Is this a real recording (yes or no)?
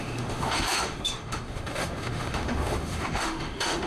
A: no